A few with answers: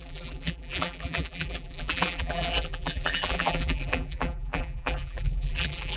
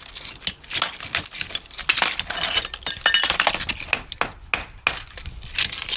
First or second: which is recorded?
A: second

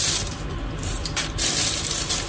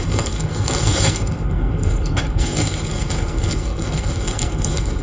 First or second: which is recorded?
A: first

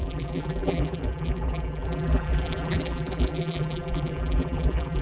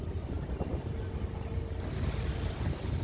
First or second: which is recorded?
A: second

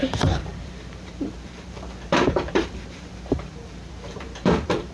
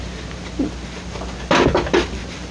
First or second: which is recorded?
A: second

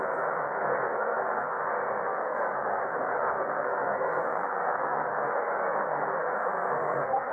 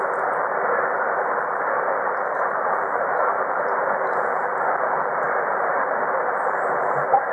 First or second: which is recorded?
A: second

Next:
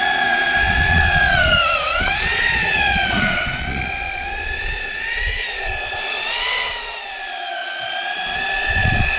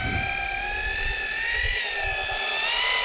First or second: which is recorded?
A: second